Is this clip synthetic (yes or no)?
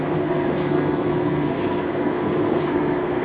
yes